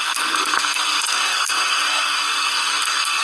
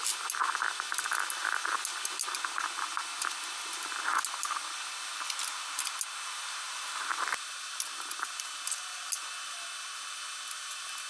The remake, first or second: first